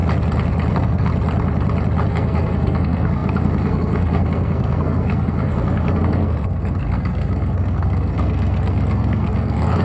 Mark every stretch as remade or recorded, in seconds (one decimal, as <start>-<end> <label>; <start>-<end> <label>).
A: 0.0-0.7 recorded; 0.7-1.1 remade; 1.1-2.1 recorded; 2.1-9.8 remade